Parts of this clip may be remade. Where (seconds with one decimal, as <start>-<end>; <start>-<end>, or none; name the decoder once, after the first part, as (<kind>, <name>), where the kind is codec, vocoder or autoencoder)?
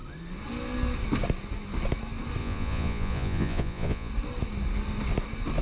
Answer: 2.4-4.1 (vocoder, Vocos)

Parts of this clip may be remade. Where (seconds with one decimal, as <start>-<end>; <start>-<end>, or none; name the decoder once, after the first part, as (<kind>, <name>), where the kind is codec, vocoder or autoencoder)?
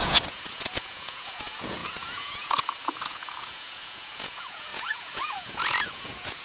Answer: 0.0-6.4 (vocoder, Vocos)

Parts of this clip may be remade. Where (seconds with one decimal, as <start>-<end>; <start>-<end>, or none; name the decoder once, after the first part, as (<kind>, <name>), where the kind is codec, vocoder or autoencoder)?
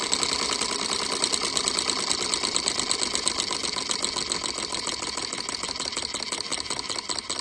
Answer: none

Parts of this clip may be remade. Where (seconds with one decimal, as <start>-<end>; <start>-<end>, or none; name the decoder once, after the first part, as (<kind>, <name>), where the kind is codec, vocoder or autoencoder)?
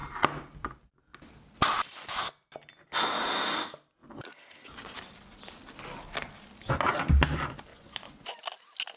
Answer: 7.7-8.4 (vocoder, Vocos)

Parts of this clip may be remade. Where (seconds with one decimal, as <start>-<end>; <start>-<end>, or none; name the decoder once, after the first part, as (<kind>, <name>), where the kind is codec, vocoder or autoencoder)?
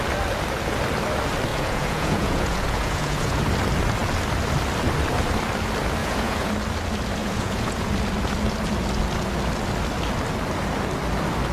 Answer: 1.5-3.4 (vocoder, Vocos); 6.0-6.5; 7.2-7.9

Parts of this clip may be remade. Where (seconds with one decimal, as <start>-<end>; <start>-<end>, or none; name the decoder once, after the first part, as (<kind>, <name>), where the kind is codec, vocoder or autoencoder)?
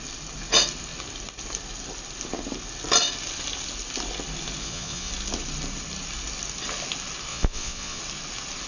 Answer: 4.6-5.1 (vocoder, Vocos); 7.3-8.0